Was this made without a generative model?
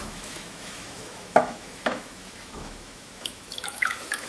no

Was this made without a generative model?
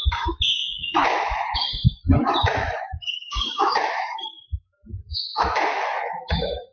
no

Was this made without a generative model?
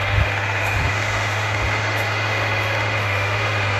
no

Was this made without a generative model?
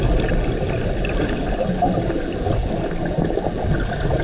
yes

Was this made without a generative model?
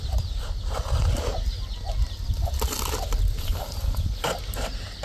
yes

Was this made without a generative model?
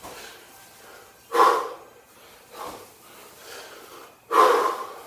yes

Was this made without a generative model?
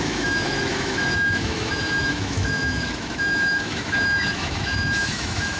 no